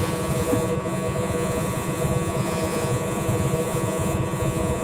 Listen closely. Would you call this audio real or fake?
fake